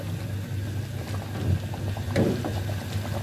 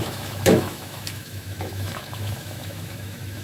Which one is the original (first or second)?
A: first